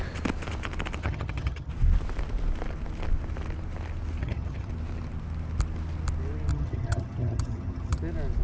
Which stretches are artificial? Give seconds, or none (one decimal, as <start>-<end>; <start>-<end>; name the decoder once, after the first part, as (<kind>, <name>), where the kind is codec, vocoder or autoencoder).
1.0-1.7 (vocoder, HiFi-GAN); 4.2-4.7; 6.5-8.0